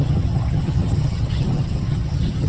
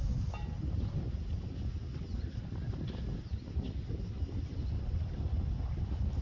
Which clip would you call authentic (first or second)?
second